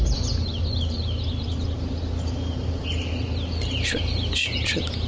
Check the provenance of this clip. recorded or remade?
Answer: recorded